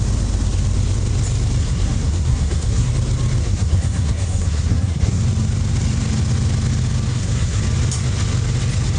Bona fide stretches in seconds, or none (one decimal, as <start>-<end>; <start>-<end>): 0.0-1.6; 2.9-3.4; 5.2-7.1; 7.6-9.0